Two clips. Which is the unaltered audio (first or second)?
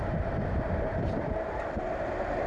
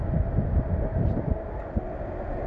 second